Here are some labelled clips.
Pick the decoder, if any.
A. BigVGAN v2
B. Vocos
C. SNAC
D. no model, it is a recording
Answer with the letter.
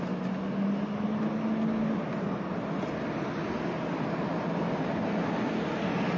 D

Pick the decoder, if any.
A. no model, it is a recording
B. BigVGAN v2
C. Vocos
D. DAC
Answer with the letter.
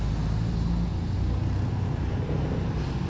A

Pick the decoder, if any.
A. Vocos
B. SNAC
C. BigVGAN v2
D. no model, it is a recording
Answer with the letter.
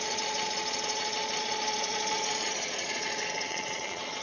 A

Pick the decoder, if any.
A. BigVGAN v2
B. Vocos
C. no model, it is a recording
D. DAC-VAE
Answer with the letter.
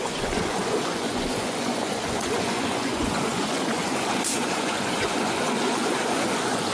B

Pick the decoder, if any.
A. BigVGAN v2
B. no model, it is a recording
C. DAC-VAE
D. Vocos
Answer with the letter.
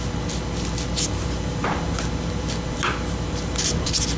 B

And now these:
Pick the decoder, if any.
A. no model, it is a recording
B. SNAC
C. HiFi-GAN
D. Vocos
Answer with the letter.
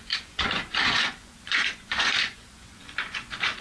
D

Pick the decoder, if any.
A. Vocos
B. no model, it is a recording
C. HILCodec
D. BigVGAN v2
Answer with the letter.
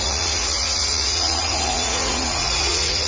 A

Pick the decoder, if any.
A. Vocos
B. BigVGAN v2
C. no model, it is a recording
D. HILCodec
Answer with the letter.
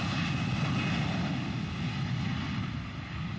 C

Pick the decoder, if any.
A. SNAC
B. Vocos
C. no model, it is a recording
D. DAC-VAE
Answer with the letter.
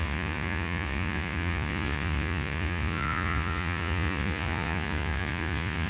B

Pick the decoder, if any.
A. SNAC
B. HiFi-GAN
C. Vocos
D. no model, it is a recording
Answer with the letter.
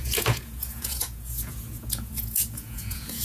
C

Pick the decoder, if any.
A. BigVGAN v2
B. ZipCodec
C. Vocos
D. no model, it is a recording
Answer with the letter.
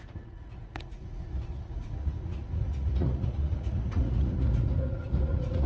C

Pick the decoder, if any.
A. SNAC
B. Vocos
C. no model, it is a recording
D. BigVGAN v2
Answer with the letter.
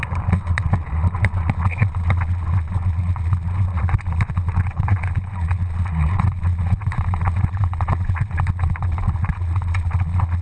B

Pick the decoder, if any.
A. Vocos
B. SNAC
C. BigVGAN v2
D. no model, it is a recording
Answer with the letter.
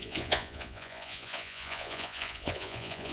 A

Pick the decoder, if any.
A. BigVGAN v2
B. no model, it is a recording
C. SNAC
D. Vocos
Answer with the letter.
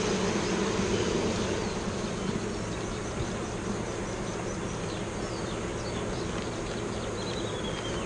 B